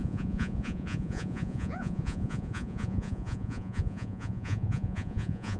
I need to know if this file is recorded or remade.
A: remade